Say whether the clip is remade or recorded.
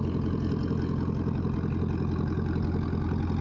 recorded